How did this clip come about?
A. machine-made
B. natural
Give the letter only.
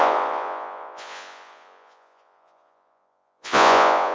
A